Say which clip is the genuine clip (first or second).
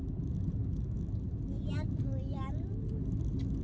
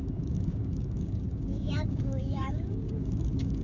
first